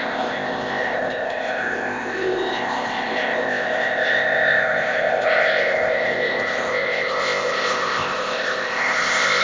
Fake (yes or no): yes